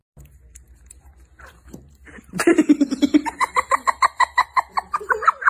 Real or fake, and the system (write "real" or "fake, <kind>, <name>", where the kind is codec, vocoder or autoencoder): fake, vocoder, BigVGAN v2